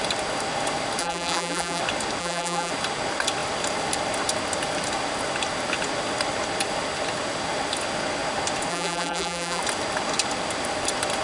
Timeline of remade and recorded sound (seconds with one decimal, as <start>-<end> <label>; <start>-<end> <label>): 0.0-1.0 recorded; 1.0-1.8 remade; 1.8-2.2 recorded; 2.2-2.7 remade; 2.7-8.7 recorded; 8.7-9.6 remade; 9.6-11.2 recorded